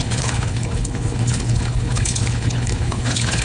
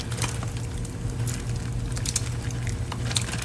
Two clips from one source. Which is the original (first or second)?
second